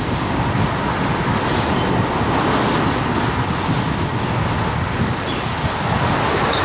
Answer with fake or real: real